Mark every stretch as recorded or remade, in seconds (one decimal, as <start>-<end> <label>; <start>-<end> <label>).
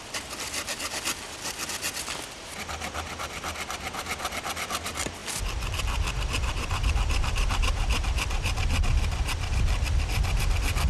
0.0-10.9 recorded